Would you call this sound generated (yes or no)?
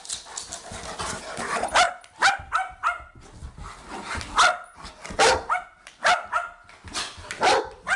no